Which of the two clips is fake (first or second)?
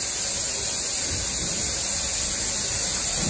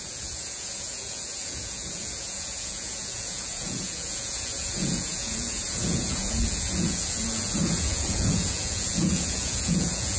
second